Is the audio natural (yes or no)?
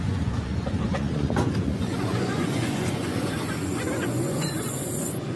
no